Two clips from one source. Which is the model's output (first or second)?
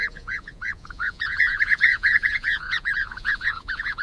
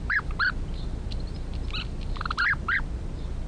first